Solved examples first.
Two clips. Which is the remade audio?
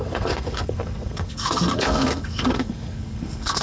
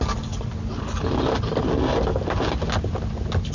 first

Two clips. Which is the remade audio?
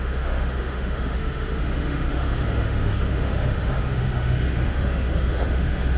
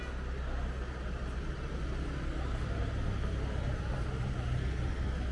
first